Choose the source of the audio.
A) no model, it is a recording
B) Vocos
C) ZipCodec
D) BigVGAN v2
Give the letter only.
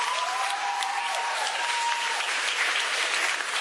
D